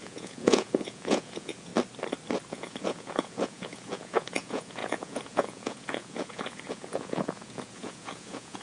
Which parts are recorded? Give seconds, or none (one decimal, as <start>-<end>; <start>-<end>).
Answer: 1.7-2.5